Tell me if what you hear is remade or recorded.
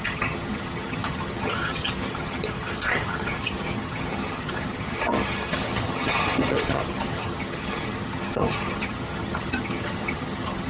remade